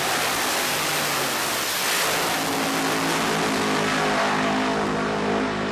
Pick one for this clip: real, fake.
real